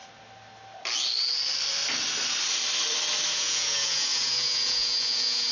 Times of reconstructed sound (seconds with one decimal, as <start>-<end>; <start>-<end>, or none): 3.3-5.5